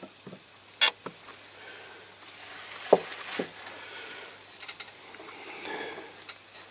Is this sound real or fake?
real